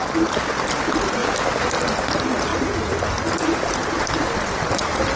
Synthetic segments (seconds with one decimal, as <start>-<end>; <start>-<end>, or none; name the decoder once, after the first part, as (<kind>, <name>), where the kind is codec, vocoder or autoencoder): none